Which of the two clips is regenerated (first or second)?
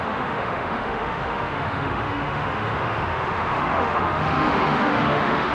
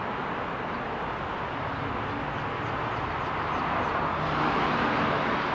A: first